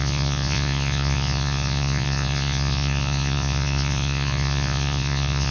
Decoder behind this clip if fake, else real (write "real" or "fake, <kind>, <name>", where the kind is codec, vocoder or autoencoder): fake, vocoder, Vocos